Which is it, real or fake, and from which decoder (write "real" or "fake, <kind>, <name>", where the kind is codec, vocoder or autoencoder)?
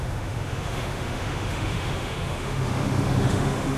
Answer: fake, autoencoder, DAC-VAE